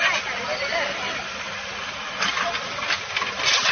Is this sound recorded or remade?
recorded